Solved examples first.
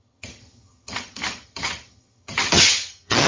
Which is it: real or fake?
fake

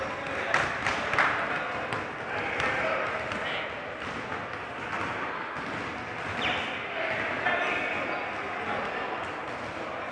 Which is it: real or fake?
real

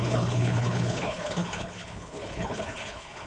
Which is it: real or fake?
fake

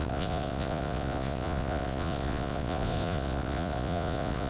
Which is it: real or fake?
fake